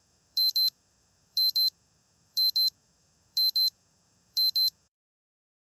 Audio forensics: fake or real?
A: fake